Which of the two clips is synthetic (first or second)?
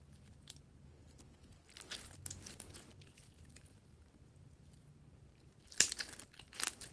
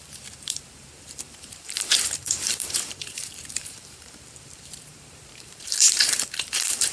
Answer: second